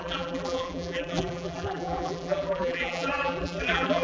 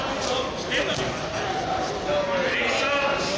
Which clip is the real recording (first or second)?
second